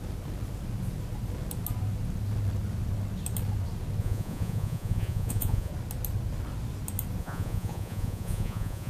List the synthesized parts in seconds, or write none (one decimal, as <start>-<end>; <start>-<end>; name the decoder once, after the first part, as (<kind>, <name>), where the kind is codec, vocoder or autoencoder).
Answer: 4.0-5.7 (vocoder, Vocos); 7.2-8.9